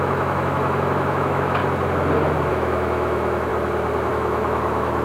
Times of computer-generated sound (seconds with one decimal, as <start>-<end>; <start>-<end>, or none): 0.0-1.6; 2.5-3.5; 4.1-5.0